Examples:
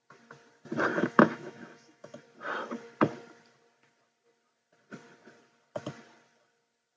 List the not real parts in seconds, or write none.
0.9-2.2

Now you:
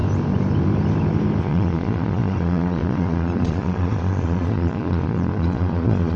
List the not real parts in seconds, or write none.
1.4-6.2

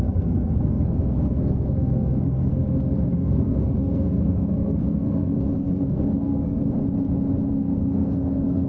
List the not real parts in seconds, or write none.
0.0-2.5; 3.1-6.8; 7.5-8.7

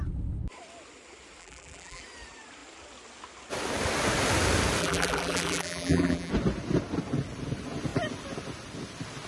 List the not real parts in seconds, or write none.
1.4-2.0; 4.8-6.3